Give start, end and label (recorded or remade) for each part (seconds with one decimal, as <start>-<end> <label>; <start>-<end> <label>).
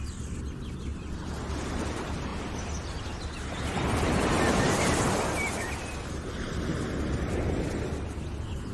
0.0-8.7 recorded